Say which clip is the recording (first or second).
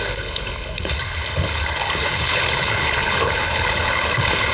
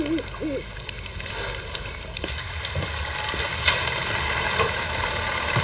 second